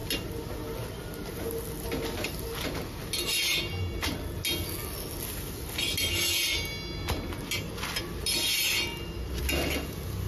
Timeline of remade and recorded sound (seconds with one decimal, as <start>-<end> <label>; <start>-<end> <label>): 0.0-10.3 recorded